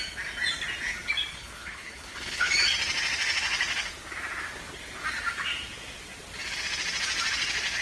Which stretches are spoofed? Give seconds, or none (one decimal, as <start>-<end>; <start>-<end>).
1.3-2.5